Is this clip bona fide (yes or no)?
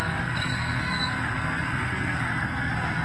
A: no